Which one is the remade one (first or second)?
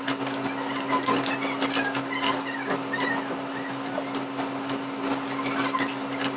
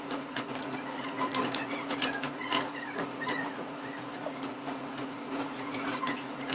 second